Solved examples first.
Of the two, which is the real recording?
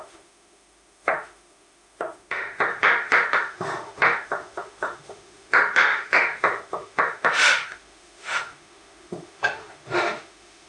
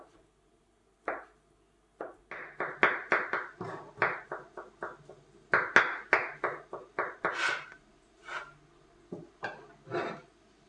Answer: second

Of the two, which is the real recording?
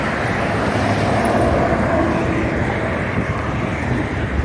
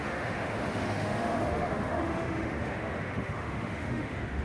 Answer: first